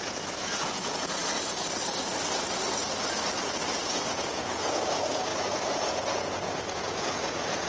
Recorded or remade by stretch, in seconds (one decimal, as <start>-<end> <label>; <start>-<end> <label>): 0.0-1.2 remade; 1.2-3.8 recorded; 3.8-7.7 remade